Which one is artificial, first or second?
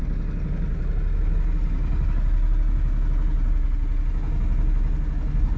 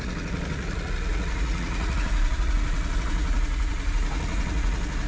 second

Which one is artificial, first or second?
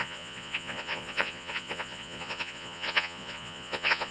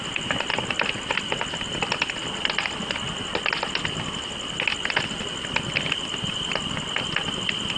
first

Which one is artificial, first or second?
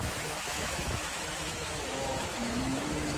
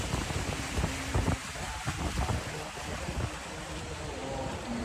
first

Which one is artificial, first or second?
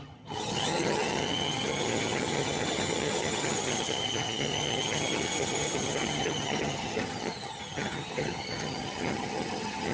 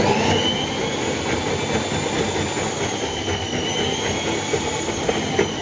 first